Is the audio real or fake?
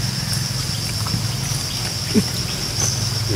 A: real